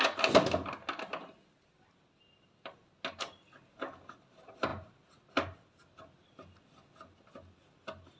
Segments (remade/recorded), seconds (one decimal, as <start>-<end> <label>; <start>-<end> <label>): 0.0-8.2 recorded